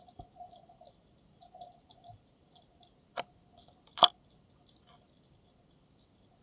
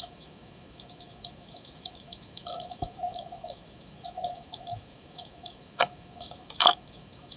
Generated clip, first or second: second